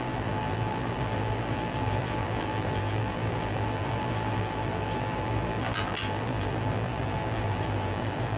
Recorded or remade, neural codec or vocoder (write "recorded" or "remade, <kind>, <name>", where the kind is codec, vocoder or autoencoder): remade, vocoder, BigVGAN v2